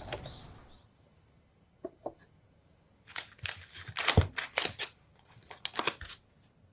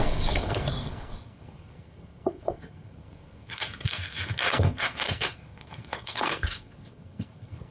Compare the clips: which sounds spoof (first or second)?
second